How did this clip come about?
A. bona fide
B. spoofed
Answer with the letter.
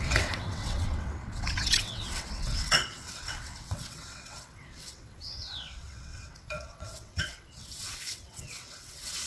B